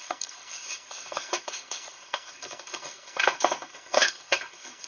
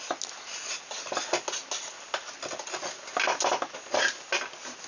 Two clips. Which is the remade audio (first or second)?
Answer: first